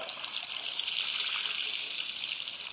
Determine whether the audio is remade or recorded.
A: recorded